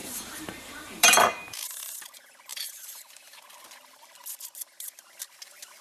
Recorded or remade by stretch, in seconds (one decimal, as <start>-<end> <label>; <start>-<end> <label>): 0.0-2.0 remade; 2.0-2.5 recorded; 2.5-3.4 remade; 3.4-5.8 recorded

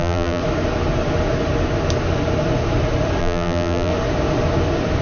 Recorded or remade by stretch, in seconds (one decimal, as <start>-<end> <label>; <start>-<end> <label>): 0.0-0.4 remade; 0.4-3.2 recorded; 3.2-3.9 remade; 3.9-5.0 recorded

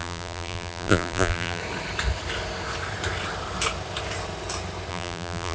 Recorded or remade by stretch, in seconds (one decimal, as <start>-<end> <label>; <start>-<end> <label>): 0.0-1.6 remade; 1.6-4.9 recorded; 4.9-5.5 remade

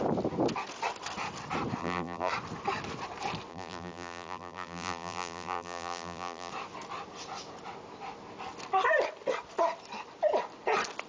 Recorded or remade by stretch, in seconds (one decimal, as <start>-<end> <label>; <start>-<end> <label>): 0.0-1.8 recorded; 1.8-2.3 remade; 2.3-3.5 recorded; 3.5-6.5 remade; 6.5-11.1 recorded

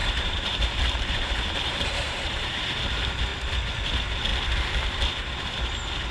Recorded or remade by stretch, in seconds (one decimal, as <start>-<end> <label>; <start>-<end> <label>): 0.0-2.8 remade; 2.8-4.3 recorded; 4.3-5.6 remade; 5.6-6.1 recorded